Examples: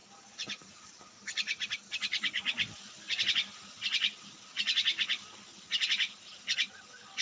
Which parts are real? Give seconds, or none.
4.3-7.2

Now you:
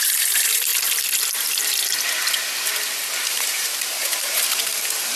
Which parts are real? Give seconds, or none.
0.7-3.3

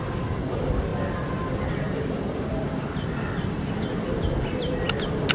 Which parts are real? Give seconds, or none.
0.0-5.3

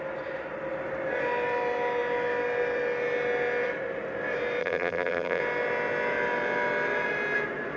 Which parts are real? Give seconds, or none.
0.0-4.6; 5.4-7.8

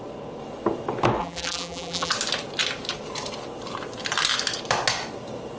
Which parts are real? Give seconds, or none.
0.0-1.2; 2.1-5.6